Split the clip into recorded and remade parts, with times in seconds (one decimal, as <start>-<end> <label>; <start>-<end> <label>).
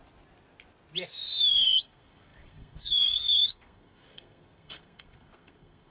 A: 0.0-1.5 recorded; 1.5-5.9 remade